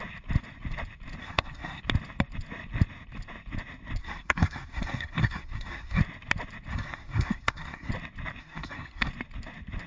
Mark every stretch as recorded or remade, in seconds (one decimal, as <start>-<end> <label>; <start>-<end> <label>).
0.0-1.2 recorded; 1.2-1.8 remade; 1.8-4.0 recorded; 4.0-6.0 remade; 6.0-6.7 recorded; 6.7-7.9 remade; 7.9-8.4 recorded; 8.4-9.1 remade; 9.1-9.9 recorded